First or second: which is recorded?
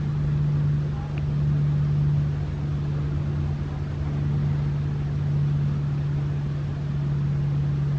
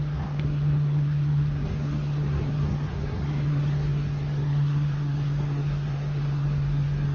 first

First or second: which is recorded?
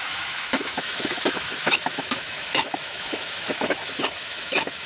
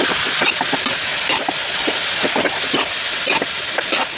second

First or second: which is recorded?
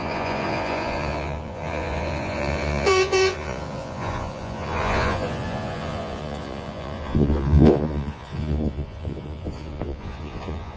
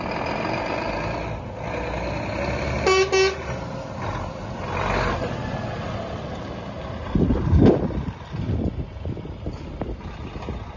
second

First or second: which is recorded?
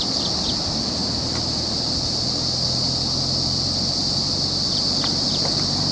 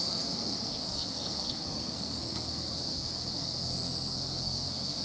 first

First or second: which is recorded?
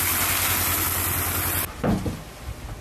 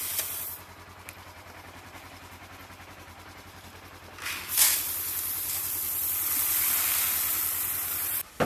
first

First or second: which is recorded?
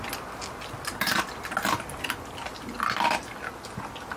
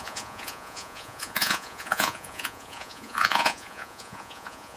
first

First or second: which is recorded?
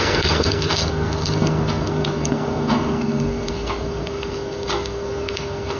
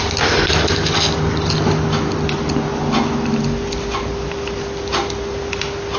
second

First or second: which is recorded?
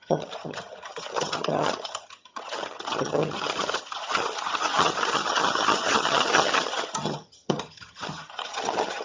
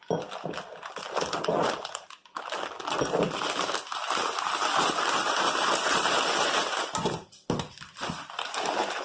second